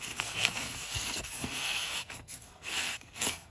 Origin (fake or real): fake